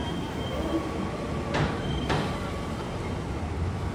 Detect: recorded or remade recorded